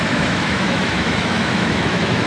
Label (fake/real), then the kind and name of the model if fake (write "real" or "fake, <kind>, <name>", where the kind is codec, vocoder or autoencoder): fake, autoencoder, DAC-VAE